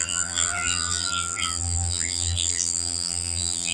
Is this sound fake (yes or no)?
yes